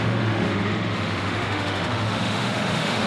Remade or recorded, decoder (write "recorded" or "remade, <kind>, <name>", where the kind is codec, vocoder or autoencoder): remade, autoencoder, DAC-VAE